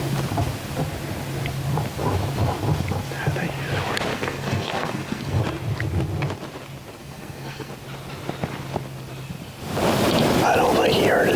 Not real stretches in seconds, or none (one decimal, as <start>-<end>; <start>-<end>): 4.1-5.4; 7.0-7.7